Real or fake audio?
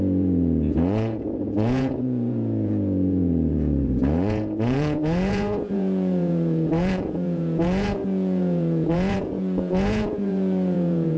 fake